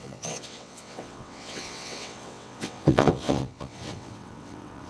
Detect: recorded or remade remade